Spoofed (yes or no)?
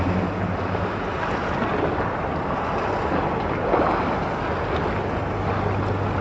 no